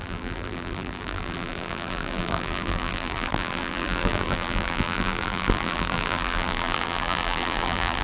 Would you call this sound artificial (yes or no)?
yes